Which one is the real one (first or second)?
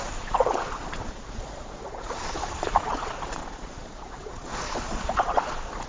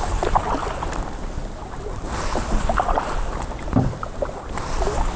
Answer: second